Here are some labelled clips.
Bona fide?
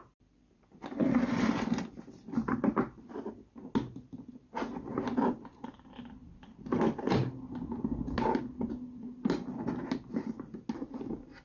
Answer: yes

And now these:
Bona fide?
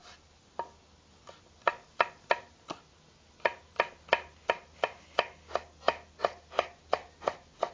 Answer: yes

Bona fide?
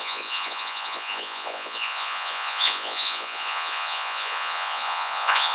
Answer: no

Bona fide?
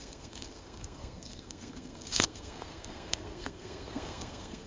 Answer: no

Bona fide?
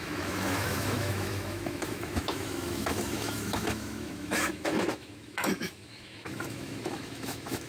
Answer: no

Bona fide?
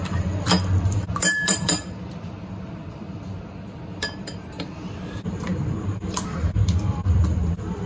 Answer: no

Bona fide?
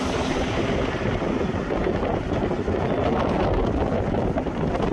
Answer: yes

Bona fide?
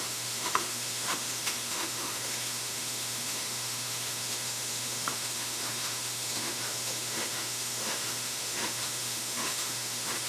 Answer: no